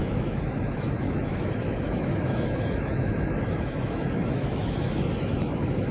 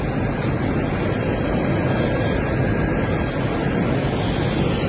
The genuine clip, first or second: second